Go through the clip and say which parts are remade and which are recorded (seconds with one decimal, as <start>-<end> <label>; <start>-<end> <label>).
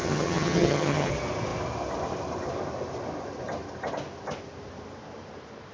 0.0-1.1 remade; 1.1-5.7 recorded